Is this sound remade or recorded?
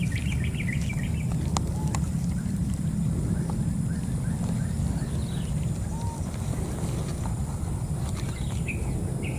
recorded